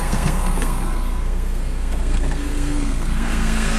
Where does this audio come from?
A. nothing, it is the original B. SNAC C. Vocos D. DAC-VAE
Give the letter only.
B